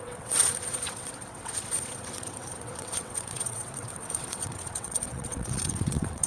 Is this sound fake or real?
fake